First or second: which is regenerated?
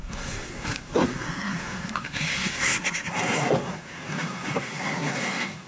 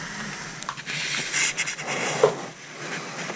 first